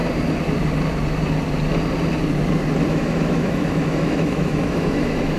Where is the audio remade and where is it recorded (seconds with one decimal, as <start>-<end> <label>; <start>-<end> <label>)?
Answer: 0.0-2.9 recorded; 2.9-5.4 remade